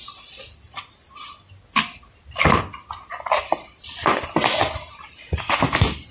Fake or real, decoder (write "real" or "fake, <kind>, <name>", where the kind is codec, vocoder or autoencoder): real